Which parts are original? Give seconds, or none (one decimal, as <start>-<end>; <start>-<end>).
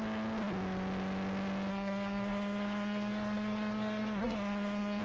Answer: 0.0-1.7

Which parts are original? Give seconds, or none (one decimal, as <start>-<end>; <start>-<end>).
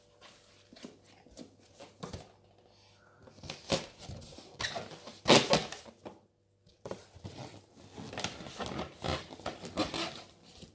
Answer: 0.0-10.7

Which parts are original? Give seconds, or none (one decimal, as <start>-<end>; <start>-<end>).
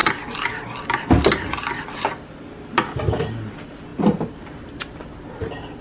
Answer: 0.0-3.9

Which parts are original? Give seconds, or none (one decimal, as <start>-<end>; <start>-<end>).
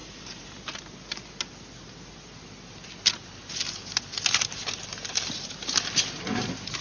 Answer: 0.8-4.9; 5.8-6.8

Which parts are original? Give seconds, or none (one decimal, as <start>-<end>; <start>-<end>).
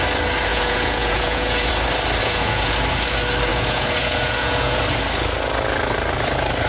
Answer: 0.0-0.5; 1.7-2.2; 2.7-3.5; 4.8-6.7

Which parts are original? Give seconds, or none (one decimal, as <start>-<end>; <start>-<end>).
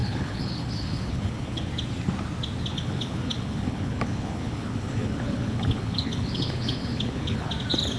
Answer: 1.7-2.7; 7.5-8.0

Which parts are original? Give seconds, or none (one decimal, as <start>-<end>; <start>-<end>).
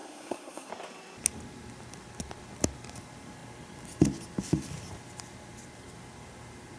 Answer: 0.7-6.8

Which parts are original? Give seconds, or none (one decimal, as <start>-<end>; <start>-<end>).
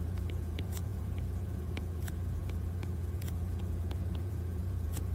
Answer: none